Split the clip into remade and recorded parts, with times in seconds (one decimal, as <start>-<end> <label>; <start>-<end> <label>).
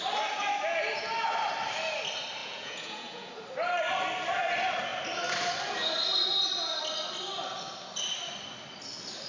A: 0.0-2.4 recorded; 2.4-3.3 remade; 3.3-9.3 recorded